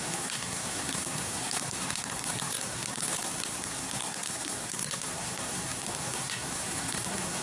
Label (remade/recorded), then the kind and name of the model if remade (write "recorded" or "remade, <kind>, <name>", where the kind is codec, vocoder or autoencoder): remade, codec, SNAC